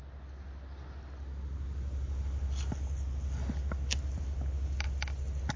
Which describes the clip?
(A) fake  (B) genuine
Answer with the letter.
B